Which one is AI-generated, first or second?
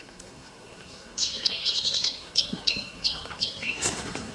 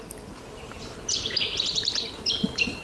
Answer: first